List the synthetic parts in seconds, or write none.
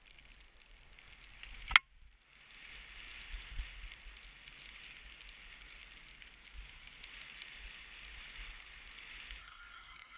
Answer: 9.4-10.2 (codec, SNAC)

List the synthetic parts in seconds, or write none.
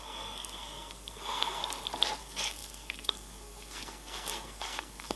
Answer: 0.0-1.6 (codec, SNAC); 2.2-5.2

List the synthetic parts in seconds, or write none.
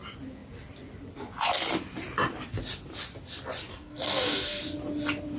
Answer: 3.7-4.6 (codec, SNAC)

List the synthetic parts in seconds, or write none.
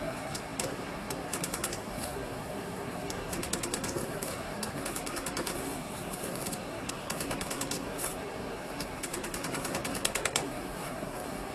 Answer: 0.0-11.5 (codec, SNAC)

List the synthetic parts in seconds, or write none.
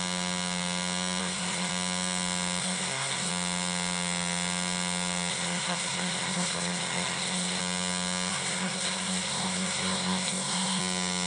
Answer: 1.2-1.7 (codec, SNAC); 2.6-3.3; 5.3-7.6; 8.3-10.8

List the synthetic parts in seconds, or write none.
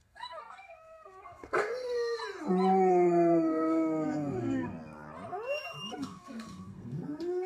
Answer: 0.0-2.2 (codec, SNAC); 2.9-4.7; 5.9-7.5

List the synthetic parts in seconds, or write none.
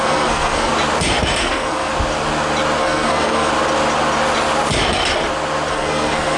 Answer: 0.0-0.7 (codec, SNAC); 1.4-1.9; 2.8-3.5; 5.7-6.4